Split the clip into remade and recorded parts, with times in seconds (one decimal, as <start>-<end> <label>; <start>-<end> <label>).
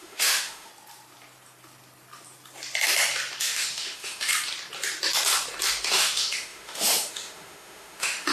0.0-0.7 remade; 0.7-3.4 recorded; 3.4-4.3 remade; 4.3-5.9 recorded; 5.9-8.3 remade